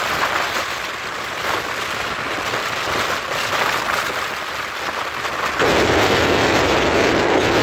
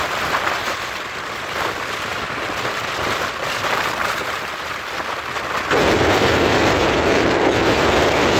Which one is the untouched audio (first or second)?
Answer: first